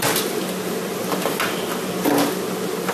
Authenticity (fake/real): real